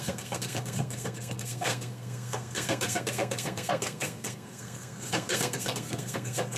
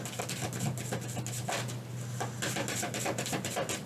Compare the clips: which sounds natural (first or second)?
second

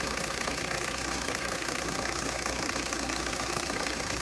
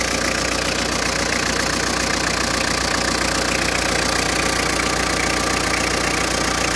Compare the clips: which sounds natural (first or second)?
second